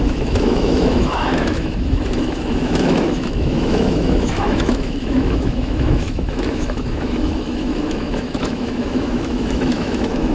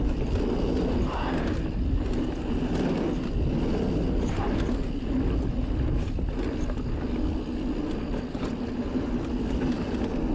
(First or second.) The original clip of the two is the second